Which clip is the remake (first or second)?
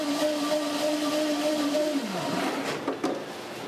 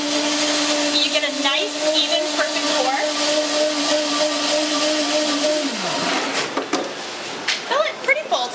first